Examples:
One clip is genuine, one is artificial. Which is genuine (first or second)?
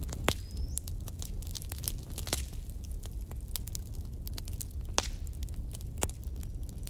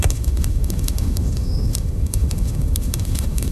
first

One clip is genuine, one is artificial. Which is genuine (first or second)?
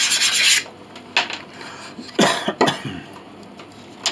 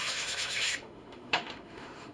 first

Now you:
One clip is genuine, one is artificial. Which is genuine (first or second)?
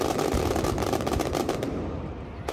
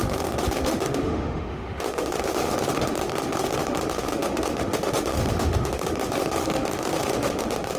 first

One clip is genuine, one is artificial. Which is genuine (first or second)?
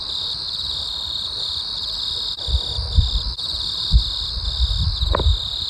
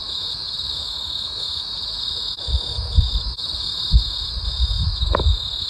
first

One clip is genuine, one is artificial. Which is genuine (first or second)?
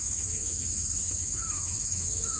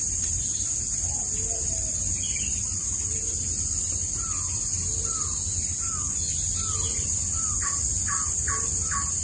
second